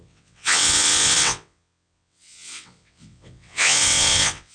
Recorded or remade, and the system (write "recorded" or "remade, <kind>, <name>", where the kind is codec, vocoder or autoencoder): remade, vocoder, WaveNeXt